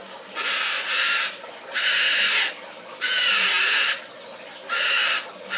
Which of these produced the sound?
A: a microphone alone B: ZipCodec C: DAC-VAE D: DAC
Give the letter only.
A